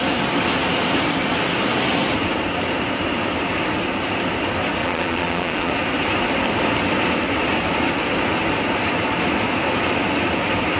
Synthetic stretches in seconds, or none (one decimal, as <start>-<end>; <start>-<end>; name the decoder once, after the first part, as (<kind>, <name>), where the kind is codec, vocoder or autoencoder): 4.8-5.7 (vocoder, Vocos)